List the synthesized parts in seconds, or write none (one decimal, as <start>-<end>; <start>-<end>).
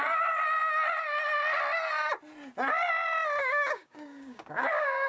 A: 3.4-5.1